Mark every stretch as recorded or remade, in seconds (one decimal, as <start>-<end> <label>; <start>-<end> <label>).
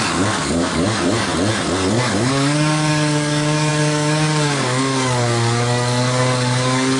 0.0-1.3 remade; 1.3-1.9 recorded; 1.9-7.0 remade